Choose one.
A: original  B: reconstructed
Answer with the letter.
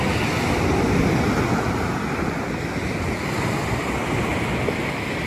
A